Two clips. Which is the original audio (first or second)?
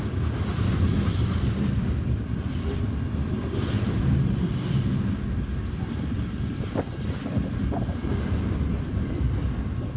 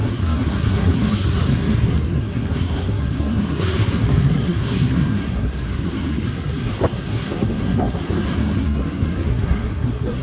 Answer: first